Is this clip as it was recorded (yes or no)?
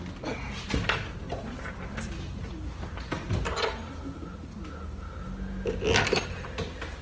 yes